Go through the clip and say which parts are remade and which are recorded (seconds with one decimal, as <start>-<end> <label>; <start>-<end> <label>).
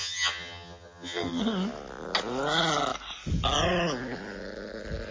0.0-1.4 remade; 1.4-5.1 recorded